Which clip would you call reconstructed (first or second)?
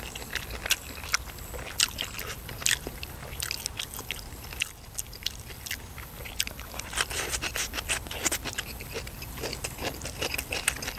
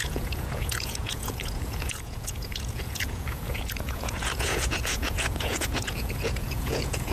second